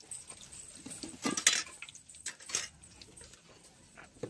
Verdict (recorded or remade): recorded